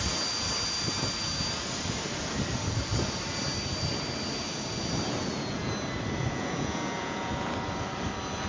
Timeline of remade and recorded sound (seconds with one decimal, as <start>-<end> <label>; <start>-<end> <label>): 0.0-5.2 recorded; 5.2-5.7 remade; 5.7-6.2 recorded; 6.2-7.3 remade; 7.3-8.5 recorded